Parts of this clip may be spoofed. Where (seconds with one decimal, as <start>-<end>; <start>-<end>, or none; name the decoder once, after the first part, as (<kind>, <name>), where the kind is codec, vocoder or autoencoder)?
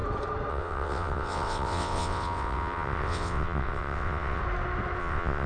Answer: 0.5-4.4 (vocoder, WaveNeXt); 5.0-5.5